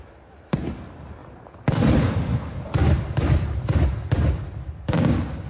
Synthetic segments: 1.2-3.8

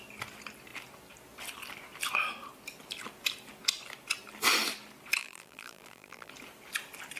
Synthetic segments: 5.2-6.3

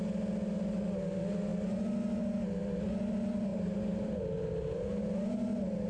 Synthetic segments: 3.5-5.0

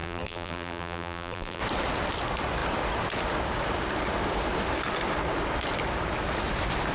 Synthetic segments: 0.0-1.6

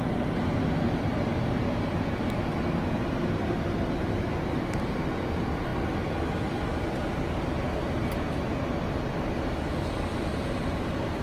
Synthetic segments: none

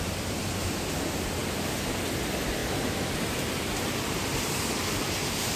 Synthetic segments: 1.4-1.9

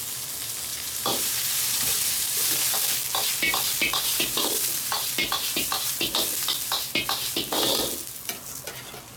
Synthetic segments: 0.7-2.5; 4.1-4.7

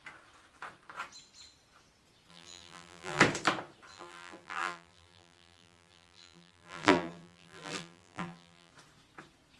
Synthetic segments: 2.3-3.2; 3.9-8.7